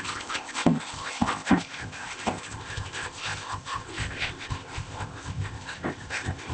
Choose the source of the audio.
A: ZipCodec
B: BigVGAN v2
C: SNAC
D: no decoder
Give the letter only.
A